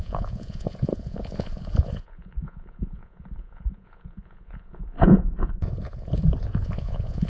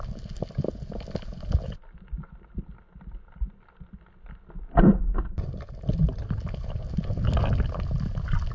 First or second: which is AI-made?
first